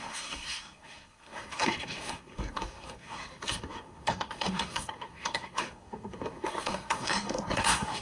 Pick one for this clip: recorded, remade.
remade